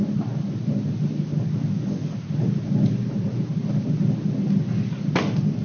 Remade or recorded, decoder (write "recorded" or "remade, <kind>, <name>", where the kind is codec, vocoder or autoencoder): recorded